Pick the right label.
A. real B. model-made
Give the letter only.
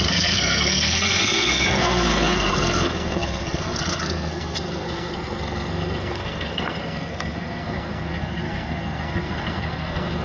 B